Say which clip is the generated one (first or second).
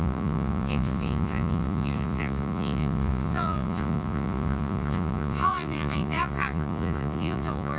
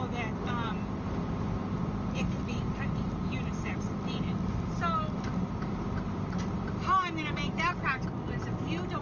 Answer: first